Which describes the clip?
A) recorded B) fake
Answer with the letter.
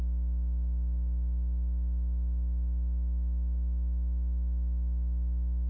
A